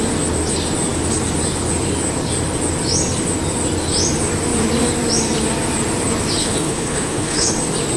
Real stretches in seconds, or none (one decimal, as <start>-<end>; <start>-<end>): 0.0-6.4; 7.5-8.0